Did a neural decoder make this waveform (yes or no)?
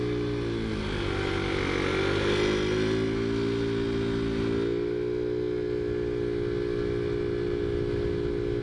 no